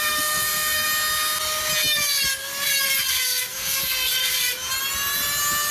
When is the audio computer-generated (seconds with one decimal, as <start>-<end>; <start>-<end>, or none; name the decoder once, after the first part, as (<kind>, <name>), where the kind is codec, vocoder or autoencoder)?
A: 0.0-0.9 (codec, SNAC); 3.1-4.2